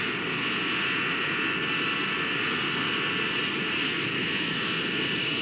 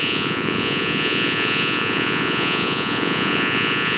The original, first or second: first